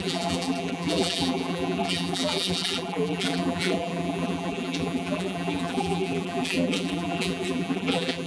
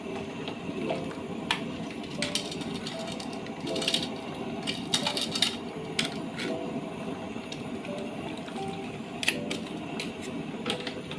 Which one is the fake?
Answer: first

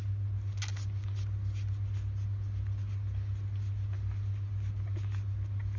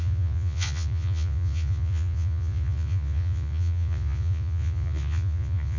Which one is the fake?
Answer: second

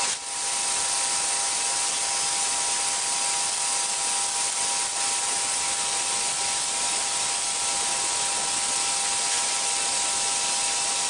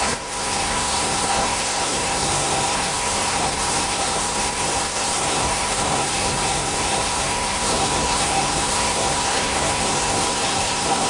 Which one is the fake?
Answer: second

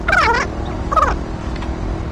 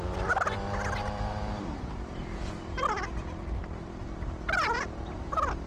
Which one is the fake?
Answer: second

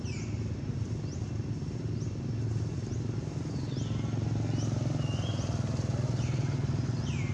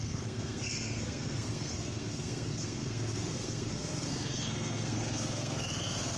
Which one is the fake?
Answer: second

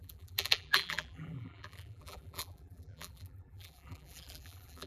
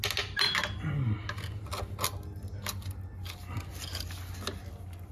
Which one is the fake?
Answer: first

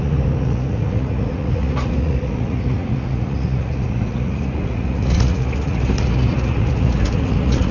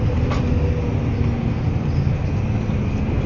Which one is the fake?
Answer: first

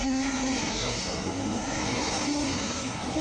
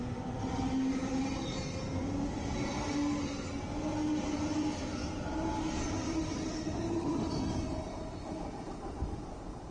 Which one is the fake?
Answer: first